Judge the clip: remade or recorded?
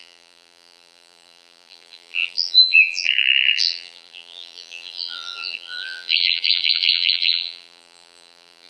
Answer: remade